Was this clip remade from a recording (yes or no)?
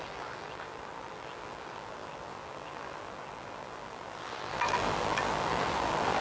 yes